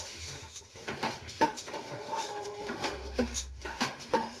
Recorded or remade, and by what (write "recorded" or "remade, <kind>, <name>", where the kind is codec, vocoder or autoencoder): remade, autoencoder, DAC-VAE